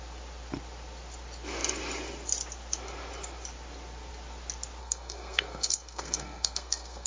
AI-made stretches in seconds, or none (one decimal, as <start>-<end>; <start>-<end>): 4.8-7.1

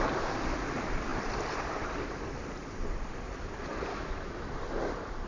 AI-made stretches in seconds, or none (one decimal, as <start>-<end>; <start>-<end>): 3.9-4.5

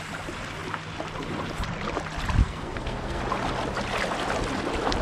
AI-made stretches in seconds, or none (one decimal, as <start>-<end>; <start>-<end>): 2.4-3.2